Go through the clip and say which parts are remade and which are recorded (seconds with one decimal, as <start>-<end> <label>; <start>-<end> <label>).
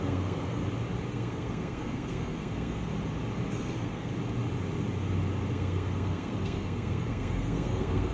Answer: 0.0-0.6 remade; 0.6-1.1 recorded; 1.1-2.9 remade; 2.9-3.5 recorded; 3.5-4.1 remade; 4.1-5.5 recorded; 5.5-8.1 remade